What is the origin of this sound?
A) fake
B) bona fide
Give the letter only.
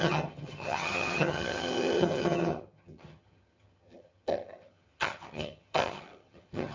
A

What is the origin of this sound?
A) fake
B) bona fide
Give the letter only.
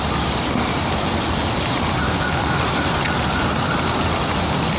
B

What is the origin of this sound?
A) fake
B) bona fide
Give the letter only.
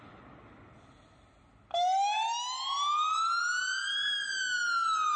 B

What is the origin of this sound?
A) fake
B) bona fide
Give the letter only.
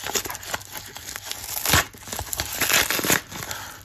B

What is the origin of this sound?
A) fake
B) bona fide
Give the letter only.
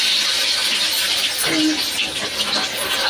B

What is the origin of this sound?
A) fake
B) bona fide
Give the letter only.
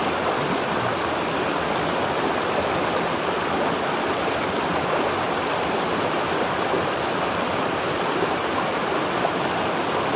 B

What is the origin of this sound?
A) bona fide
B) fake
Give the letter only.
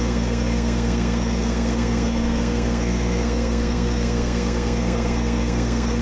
B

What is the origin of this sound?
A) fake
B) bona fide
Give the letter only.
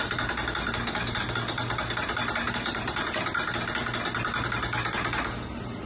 B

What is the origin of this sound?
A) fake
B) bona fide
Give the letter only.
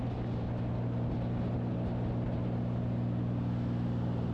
B